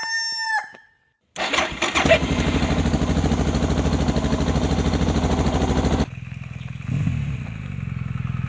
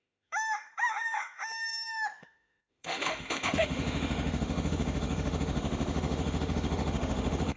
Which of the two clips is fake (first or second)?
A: second